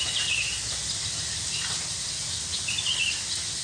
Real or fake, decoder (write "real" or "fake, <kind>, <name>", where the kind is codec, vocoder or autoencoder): real